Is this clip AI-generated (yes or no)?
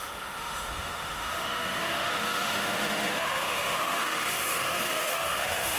yes